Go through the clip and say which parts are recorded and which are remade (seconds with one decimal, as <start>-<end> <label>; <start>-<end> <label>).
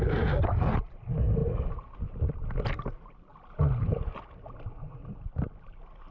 0.0-6.1 recorded